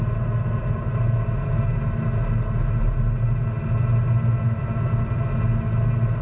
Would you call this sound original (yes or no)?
yes